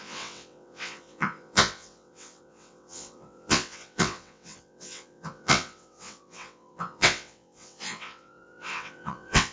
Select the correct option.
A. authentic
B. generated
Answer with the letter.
B